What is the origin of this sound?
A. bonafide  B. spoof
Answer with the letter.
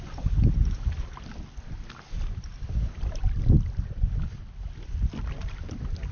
A